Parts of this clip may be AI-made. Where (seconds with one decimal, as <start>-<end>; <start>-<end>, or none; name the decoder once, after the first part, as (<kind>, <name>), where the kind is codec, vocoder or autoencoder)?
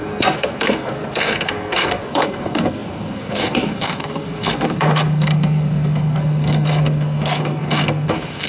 0.0-8.5 (codec, SNAC)